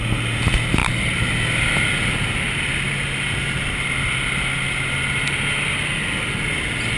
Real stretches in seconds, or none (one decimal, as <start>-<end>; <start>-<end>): 0.0-0.8; 1.3-7.0